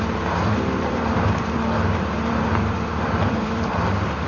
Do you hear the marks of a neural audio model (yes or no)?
yes